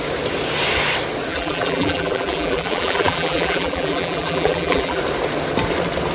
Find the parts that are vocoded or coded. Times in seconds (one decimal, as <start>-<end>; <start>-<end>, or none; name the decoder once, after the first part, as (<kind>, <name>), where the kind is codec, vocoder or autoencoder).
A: 1.3-5.0 (vocoder, BigVGAN v2)